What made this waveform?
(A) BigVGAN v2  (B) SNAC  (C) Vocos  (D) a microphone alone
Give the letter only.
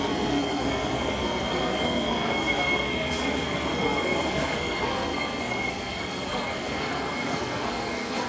B